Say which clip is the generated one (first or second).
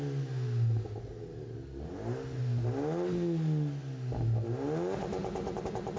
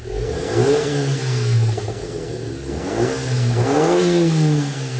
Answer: second